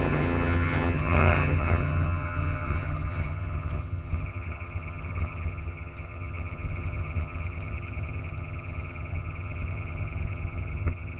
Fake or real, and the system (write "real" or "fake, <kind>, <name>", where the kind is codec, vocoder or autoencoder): fake, vocoder, HiFi-GAN